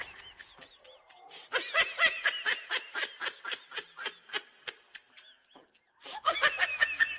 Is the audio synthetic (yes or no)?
no